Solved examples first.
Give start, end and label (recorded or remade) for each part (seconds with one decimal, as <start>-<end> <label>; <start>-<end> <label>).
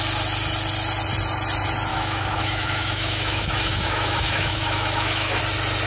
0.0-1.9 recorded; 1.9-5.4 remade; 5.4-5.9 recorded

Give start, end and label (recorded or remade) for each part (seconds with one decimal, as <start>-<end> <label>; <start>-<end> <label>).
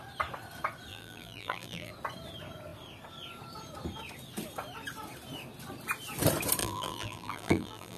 0.0-0.9 recorded; 0.9-1.9 remade; 1.9-6.6 recorded; 6.6-8.0 remade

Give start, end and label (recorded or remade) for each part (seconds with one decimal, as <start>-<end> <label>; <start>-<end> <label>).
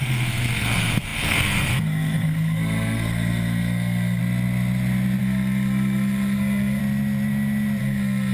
0.0-4.2 remade; 4.2-5.2 recorded; 5.2-6.8 remade; 6.8-7.8 recorded; 7.8-8.3 remade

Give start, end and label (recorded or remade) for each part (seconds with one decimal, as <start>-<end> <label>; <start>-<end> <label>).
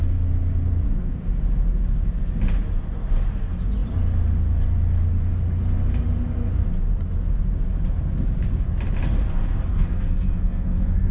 0.0-9.7 recorded; 9.7-11.1 remade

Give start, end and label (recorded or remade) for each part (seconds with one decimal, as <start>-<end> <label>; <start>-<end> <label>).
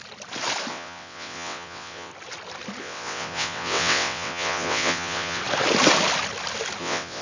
0.0-0.7 recorded; 0.7-2.1 remade; 2.1-2.8 recorded; 2.8-5.4 remade; 5.4-6.8 recorded; 6.8-7.2 remade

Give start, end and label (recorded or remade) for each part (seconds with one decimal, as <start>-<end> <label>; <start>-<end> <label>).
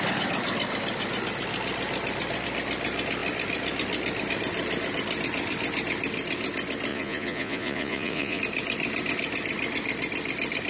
0.0-6.9 recorded; 6.9-8.4 remade; 8.4-10.7 recorded